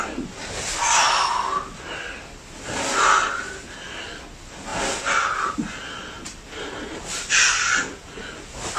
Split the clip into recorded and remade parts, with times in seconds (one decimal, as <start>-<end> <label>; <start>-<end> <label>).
0.0-4.7 recorded; 4.7-7.9 remade; 7.9-8.8 recorded